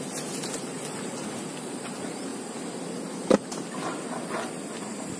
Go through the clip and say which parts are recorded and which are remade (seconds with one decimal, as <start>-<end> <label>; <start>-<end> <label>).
0.0-5.2 recorded